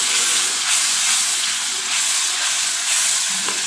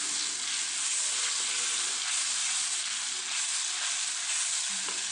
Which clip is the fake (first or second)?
first